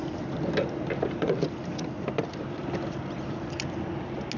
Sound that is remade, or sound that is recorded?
recorded